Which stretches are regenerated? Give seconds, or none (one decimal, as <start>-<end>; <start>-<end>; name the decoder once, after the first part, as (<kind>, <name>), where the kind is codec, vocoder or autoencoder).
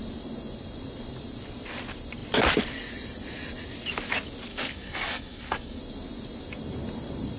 4.5-5.8 (codec, DAC)